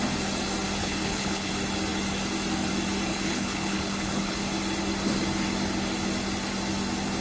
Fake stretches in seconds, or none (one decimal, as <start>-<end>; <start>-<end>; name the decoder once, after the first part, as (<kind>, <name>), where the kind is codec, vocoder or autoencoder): 0.8-1.5 (codec, HILCodec); 3.1-4.4